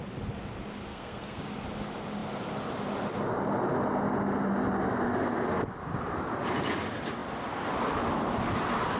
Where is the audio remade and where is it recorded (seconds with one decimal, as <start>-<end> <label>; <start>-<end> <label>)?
0.0-0.9 recorded; 0.9-1.4 remade; 1.4-9.0 recorded